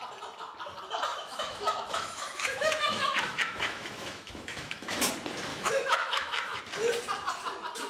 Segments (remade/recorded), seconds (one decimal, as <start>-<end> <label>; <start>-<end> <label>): 0.0-1.1 recorded; 1.1-5.1 remade; 5.1-5.5 recorded; 5.5-6.6 remade; 6.6-7.9 recorded